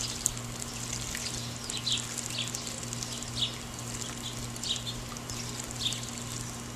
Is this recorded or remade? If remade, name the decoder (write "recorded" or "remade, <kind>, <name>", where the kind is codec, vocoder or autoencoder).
recorded